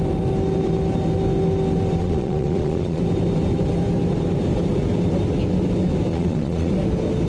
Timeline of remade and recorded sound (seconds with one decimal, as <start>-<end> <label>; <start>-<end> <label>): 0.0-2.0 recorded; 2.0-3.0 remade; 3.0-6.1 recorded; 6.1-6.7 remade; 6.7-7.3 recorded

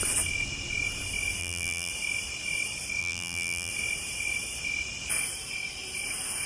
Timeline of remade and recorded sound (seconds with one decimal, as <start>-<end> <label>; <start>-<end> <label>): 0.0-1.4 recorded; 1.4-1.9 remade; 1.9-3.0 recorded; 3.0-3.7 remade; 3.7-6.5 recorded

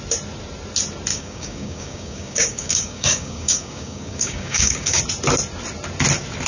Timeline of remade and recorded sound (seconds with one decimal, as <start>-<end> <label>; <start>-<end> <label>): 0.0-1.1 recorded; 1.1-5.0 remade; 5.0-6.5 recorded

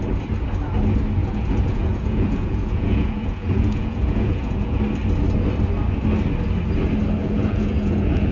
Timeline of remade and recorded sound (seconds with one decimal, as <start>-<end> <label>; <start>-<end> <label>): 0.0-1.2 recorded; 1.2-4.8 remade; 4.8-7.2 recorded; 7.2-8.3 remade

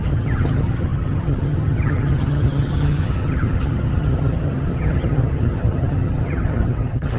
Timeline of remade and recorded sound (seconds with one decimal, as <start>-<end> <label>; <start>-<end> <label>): 0.0-7.2 remade

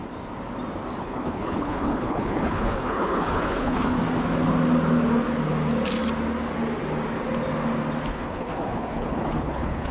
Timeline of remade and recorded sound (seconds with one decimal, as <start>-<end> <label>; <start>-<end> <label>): 0.0-1.0 recorded; 1.0-4.0 remade; 4.0-8.1 recorded; 8.1-9.9 remade

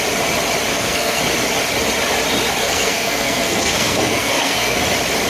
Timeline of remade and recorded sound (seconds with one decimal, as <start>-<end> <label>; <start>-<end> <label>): 0.0-0.7 recorded; 0.7-1.2 remade; 1.2-2.6 recorded; 2.6-4.8 remade; 4.8-5.3 recorded